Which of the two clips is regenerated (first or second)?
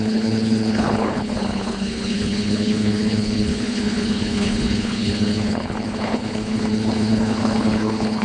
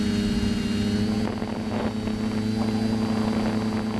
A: first